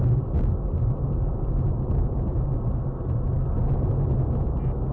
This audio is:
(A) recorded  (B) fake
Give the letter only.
A